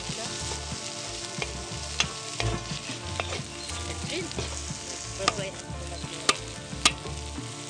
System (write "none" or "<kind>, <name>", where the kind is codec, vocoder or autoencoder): none